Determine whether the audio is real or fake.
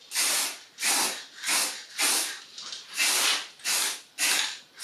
real